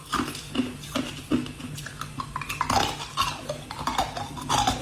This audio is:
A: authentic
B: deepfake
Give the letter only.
A